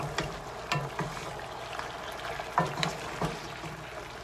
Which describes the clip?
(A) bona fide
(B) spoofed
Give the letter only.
A